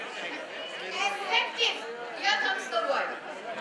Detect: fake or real real